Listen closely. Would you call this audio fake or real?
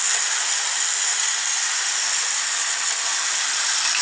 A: real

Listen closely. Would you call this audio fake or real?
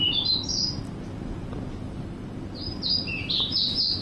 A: real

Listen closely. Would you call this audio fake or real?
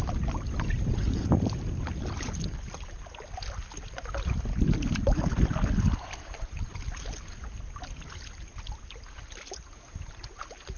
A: real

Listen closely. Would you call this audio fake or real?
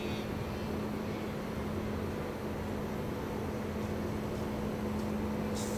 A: real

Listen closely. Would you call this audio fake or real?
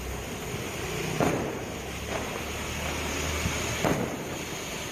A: real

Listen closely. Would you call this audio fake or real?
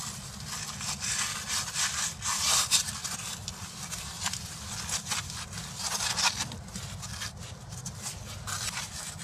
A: real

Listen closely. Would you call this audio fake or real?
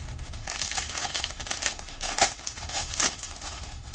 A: fake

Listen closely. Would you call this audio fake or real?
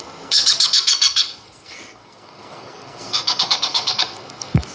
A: fake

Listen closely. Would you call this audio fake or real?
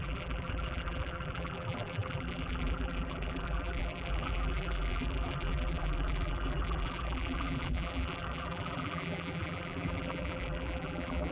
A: fake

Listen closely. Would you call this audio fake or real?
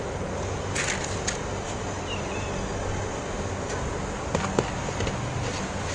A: real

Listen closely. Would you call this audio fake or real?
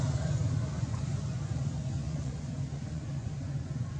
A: fake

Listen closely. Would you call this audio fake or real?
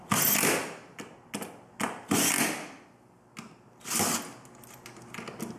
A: real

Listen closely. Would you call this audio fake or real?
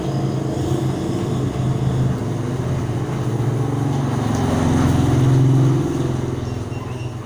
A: real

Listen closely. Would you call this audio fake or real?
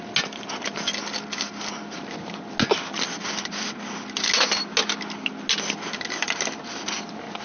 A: real